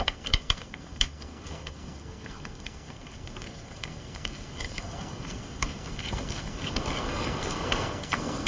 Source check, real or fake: fake